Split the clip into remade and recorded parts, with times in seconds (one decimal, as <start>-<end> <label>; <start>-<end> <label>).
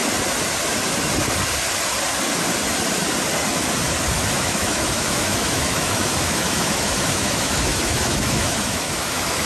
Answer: 0.0-4.3 recorded; 4.3-9.5 remade